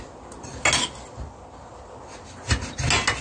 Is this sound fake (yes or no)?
no